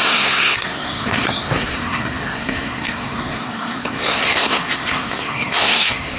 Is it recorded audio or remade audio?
remade